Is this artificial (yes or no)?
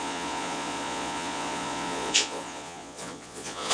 yes